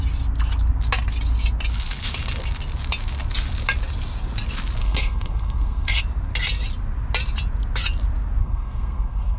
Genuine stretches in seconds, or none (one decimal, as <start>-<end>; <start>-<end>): 0.0-4.8; 6.0-8.4